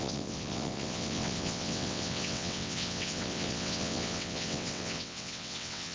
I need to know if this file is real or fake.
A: fake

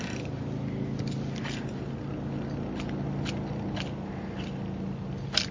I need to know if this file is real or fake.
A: real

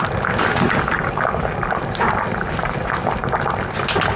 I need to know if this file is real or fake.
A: real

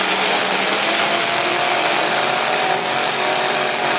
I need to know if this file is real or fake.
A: real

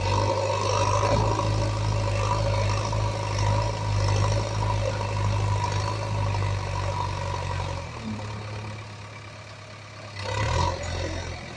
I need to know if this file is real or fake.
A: real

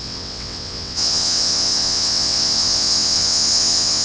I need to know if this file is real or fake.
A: fake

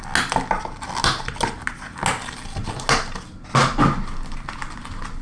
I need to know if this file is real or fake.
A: real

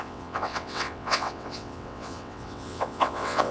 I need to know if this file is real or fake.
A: fake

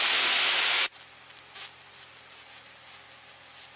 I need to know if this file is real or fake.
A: real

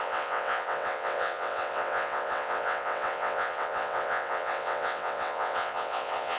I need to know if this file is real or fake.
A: fake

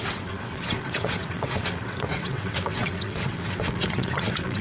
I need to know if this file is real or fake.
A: fake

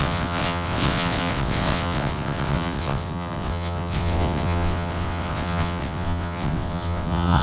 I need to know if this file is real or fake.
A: fake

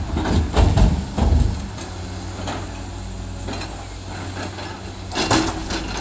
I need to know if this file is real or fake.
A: real